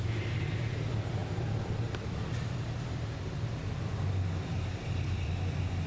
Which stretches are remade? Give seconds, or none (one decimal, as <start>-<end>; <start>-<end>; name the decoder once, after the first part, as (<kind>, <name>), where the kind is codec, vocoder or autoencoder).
0.0-3.9 (vocoder, BigVGAN v2); 5.0-5.9